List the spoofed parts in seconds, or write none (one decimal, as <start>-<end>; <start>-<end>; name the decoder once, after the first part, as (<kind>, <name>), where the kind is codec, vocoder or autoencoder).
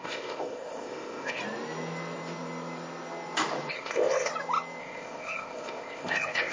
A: 0.0-1.4 (codec, ZipCodec); 3.7-4.3; 4.8-6.5